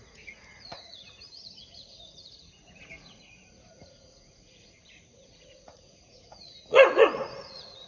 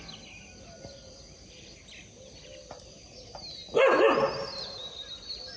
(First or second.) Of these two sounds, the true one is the second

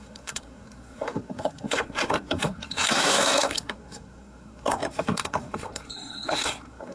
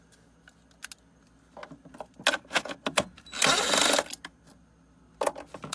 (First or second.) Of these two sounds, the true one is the second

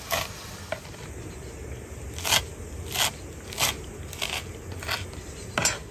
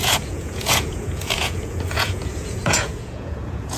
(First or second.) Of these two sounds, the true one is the first